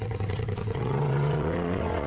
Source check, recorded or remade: remade